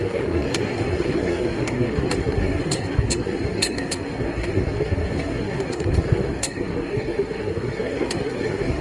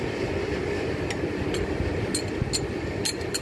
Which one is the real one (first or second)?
second